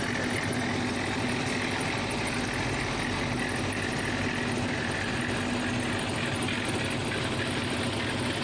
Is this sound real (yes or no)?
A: yes